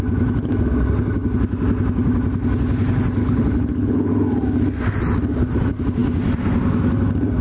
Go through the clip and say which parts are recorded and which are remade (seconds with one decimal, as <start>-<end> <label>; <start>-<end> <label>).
0.0-3.2 recorded; 3.2-4.1 remade; 4.1-7.4 recorded